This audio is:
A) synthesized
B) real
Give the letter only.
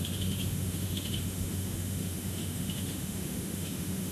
A